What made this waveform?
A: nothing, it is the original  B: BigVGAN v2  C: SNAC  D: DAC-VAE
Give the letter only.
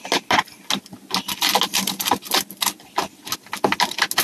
A